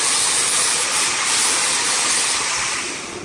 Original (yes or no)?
yes